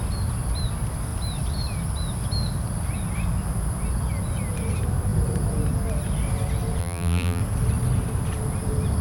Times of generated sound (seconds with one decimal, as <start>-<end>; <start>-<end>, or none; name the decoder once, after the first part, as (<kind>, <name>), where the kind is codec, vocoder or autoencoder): 6.8-7.4 (vocoder, BigVGAN v2)